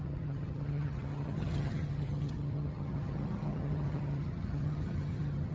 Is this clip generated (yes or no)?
yes